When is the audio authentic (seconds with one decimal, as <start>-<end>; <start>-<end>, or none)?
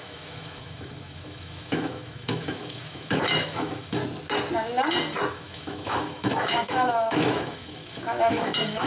4.0-5.3